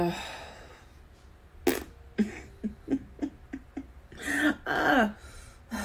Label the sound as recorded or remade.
recorded